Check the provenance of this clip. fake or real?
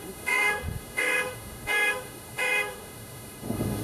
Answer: fake